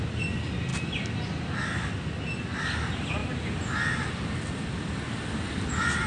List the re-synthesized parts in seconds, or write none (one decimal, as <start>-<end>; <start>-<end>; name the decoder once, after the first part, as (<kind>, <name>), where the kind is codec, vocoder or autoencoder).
none